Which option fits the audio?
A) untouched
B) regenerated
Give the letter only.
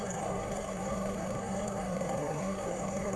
B